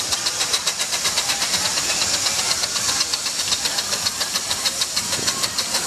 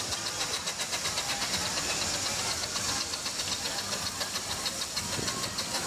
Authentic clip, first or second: second